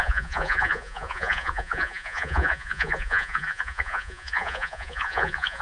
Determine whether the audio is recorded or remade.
remade